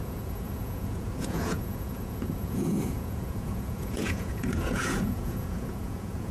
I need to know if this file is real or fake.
fake